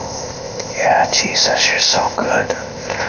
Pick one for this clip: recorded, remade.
remade